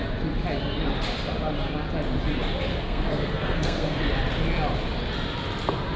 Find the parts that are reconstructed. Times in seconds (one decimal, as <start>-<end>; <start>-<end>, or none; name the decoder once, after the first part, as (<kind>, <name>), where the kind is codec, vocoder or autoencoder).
2.7-4.0 (codec, SNAC)